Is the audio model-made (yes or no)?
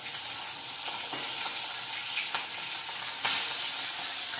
no